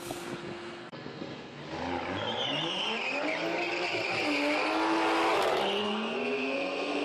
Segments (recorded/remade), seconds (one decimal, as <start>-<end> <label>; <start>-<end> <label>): 0.0-1.6 remade; 1.6-5.8 recorded; 5.8-7.0 remade